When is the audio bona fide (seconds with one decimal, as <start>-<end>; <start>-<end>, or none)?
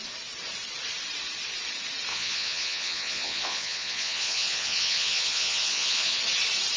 0.0-2.1; 6.2-6.8